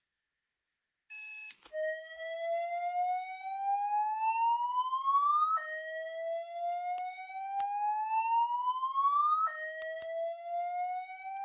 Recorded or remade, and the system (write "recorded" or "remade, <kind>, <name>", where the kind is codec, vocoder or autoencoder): remade, autoencoder, DAC-VAE